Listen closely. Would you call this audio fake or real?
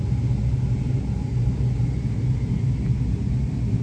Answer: real